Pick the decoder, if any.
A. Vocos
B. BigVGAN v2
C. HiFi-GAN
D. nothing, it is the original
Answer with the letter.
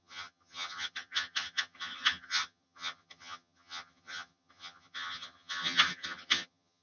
C